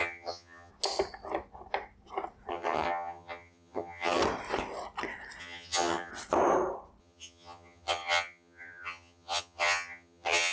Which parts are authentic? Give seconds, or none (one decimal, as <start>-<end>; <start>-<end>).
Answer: 0.7-2.5; 4.2-5.4; 6.1-7.0